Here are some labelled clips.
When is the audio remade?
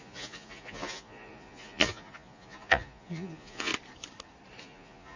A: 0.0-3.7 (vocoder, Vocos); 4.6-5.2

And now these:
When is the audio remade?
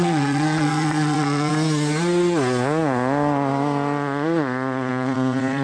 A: 0.0-1.5 (vocoder, Vocos); 4.9-5.6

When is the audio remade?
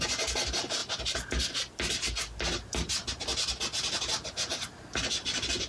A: none